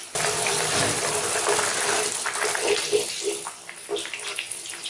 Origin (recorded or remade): remade